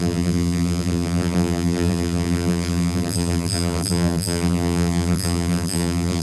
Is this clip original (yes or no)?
no